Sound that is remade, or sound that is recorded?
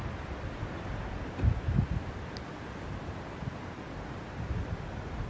recorded